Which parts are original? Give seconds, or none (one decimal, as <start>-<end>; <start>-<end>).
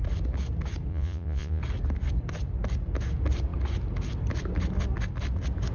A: 0.0-0.9; 1.6-5.7